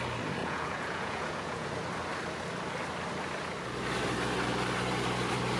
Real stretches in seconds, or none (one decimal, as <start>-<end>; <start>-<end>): 0.0-0.4; 1.7-5.6